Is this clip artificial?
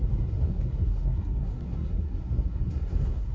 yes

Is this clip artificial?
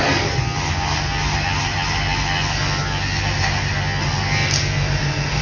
no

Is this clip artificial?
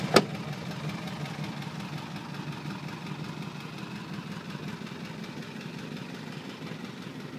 no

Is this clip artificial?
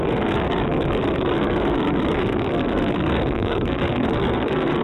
yes